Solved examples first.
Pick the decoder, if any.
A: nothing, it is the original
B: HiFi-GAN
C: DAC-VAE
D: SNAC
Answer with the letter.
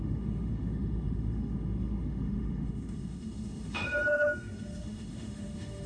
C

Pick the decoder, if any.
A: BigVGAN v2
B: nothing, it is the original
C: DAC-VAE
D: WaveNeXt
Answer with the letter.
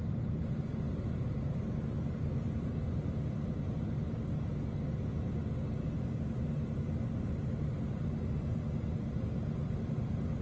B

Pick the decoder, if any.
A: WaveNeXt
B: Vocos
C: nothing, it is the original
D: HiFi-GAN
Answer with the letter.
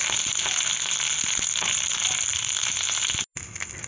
C